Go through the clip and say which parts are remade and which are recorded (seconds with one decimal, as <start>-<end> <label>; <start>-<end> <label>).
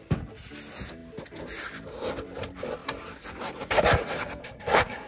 0.0-4.4 recorded; 4.4-5.1 remade